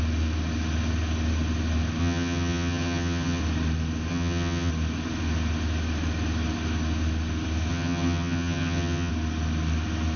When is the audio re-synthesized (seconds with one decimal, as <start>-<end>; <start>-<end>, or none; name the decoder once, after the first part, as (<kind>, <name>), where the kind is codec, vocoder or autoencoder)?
2.0-3.4 (vocoder, HiFi-GAN); 4.1-4.7; 7.7-9.1